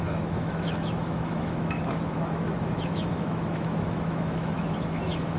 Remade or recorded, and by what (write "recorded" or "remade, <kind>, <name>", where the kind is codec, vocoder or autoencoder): remade, autoencoder, DAC-VAE